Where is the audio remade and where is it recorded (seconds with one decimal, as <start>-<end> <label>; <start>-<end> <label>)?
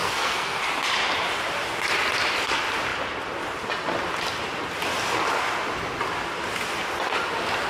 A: 0.0-0.6 remade; 0.6-7.7 recorded